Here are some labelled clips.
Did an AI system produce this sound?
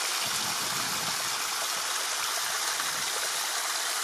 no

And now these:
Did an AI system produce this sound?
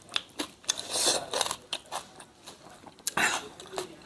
no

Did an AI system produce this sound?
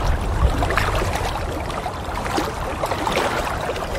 yes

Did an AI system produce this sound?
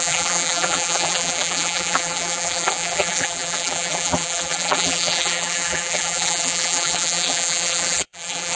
yes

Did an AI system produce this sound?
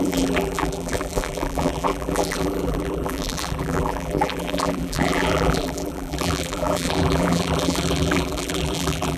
yes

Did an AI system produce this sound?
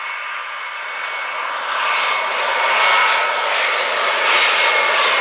no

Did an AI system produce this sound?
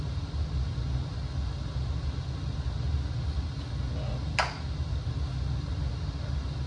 no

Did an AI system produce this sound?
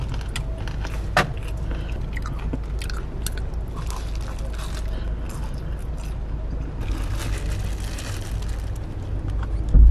no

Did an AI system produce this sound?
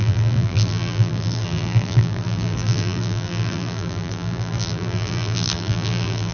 yes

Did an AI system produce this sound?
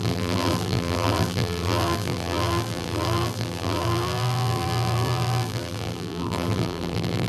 yes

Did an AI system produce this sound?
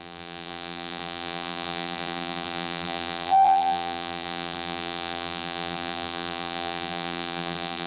yes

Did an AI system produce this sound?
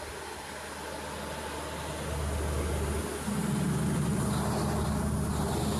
no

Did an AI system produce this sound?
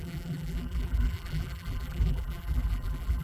yes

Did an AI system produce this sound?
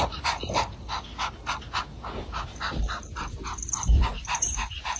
no